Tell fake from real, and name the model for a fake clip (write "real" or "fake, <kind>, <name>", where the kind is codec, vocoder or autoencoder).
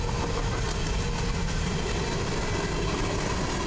real